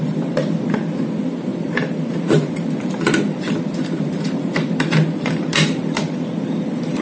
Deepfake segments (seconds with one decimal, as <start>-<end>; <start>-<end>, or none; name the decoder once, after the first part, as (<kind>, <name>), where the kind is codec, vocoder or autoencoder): 0.0-7.0 (vocoder, BigVGAN v2)